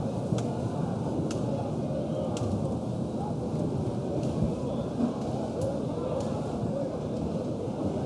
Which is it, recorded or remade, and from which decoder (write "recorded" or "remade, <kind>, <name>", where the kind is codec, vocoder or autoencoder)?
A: recorded